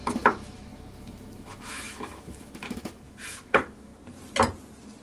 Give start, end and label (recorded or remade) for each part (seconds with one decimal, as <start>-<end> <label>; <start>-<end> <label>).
0.0-3.9 remade; 3.9-5.0 recorded